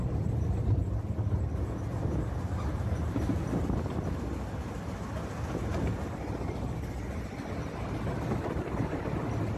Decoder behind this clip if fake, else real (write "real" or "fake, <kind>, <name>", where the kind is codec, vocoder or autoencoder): real